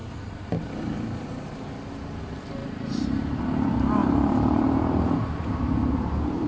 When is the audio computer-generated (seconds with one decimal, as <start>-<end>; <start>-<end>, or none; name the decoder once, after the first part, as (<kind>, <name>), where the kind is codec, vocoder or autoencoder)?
0.0-0.5 (vocoder, BigVGAN v2); 2.6-3.4; 4.0-5.9